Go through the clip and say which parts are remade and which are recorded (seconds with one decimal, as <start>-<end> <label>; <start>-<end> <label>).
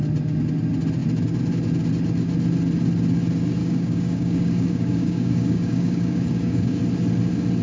0.0-3.6 recorded; 3.6-6.8 remade; 6.8-7.6 recorded